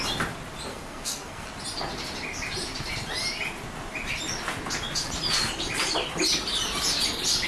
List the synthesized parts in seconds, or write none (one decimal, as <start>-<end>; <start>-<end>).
0.7-1.5